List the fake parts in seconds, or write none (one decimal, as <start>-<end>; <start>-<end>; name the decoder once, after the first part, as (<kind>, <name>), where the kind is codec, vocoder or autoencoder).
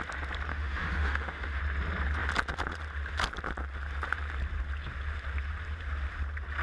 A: 0.5-1.6 (autoencoder, DAC-VAE)